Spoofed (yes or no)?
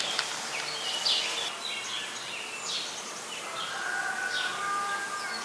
no